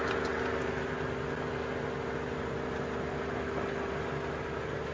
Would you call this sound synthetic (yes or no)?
no